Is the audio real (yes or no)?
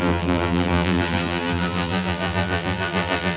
no